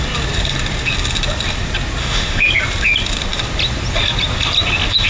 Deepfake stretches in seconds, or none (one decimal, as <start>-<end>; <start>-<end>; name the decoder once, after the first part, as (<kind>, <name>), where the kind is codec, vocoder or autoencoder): 2.0-2.5 (autoencoder, DAC-VAE)